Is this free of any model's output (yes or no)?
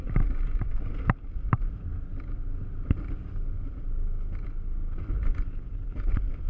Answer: yes